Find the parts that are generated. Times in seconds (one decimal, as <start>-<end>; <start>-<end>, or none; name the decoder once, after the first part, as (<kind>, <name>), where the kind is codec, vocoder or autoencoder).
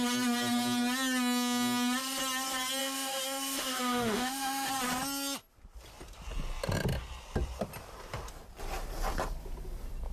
2.8-4.7 (autoencoder, DAC-VAE)